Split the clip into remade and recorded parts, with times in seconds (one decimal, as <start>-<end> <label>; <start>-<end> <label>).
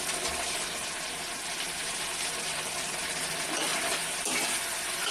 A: 0.0-5.1 recorded